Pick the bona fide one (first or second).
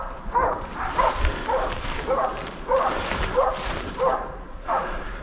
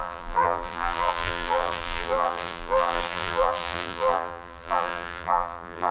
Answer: first